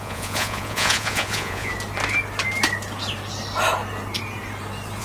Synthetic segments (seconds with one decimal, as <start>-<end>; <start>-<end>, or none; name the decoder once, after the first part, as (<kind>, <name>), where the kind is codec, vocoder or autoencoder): 0.0-1.7 (vocoder, Vocos)